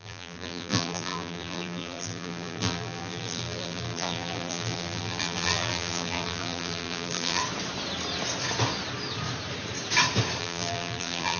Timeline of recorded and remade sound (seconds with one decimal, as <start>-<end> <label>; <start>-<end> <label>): 0.0-7.4 remade; 7.4-10.4 recorded; 10.4-11.4 remade